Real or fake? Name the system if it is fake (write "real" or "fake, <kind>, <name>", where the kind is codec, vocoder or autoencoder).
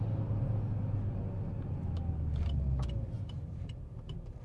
real